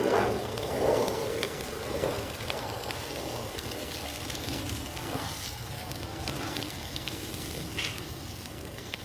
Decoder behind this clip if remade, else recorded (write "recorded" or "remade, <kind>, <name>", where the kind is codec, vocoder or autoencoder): remade, codec, SNAC